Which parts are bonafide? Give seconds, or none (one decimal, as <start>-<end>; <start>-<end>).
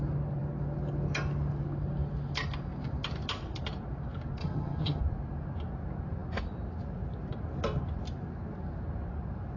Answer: 0.0-4.4; 5.0-9.6